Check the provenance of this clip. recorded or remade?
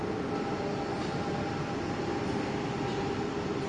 recorded